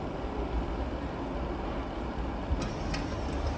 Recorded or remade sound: recorded